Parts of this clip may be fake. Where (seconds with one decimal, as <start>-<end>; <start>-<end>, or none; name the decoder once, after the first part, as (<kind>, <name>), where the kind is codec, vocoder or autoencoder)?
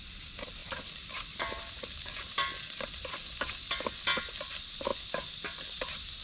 0.6-1.7 (vocoder, BigVGAN v2)